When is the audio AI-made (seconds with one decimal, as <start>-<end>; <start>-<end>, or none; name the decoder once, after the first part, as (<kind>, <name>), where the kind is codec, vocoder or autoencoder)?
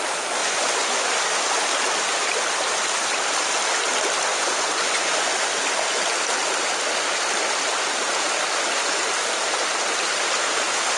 0.4-1.1 (vocoder, Vocos); 4.3-5.3